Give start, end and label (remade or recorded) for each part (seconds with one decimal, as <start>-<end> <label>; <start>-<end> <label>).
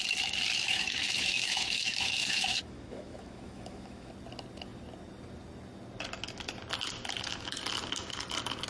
0.0-0.6 recorded; 0.6-4.1 remade; 4.1-8.7 recorded